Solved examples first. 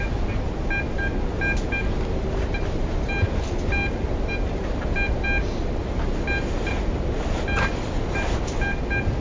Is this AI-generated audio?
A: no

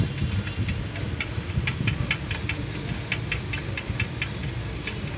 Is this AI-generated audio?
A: no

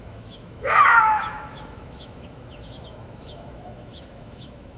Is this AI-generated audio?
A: yes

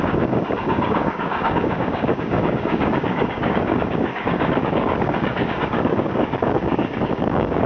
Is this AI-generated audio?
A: yes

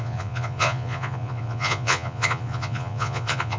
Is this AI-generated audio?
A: yes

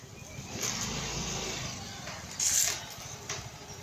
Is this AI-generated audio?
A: no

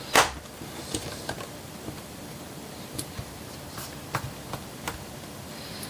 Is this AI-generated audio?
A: yes